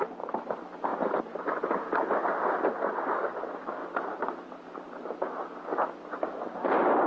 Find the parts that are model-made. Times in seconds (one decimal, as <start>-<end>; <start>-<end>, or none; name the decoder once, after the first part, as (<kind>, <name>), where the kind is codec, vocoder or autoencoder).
0.9-1.6 (vocoder, BigVGAN v2); 3.8-4.7